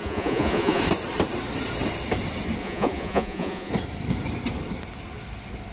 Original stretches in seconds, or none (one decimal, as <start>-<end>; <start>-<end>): 0.8-2.6; 3.7-5.7